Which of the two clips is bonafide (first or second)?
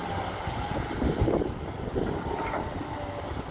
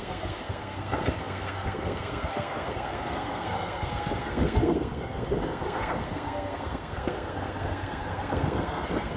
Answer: first